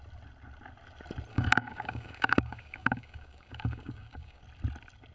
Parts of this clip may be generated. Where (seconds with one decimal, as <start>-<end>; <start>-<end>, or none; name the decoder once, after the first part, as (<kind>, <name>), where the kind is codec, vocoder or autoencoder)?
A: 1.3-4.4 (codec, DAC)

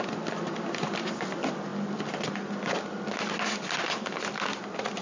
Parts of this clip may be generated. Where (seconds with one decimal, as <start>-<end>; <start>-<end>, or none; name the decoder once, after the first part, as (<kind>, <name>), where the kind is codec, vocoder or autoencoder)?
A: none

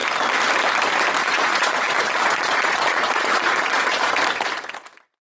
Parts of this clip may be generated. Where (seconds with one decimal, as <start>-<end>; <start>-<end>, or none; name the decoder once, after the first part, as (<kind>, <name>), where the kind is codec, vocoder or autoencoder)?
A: 1.2-4.1 (vocoder, Vocos)